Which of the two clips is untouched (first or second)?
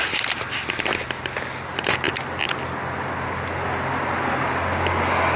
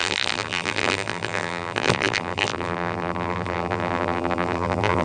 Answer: first